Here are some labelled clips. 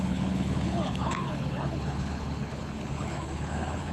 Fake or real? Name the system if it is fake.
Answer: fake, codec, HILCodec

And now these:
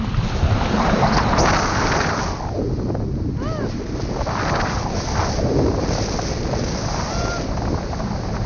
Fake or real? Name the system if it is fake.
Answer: real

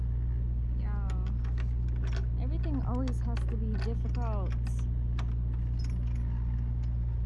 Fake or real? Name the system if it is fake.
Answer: real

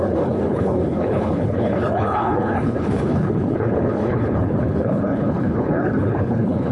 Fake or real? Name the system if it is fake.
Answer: fake, codec, HILCodec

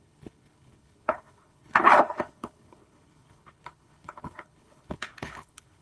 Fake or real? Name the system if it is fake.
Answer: fake, codec, HILCodec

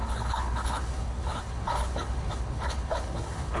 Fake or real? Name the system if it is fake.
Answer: fake, codec, HILCodec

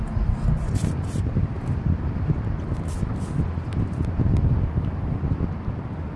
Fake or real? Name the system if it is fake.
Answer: real